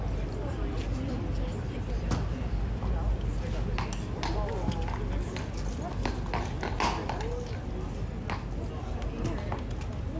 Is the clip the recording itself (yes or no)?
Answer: yes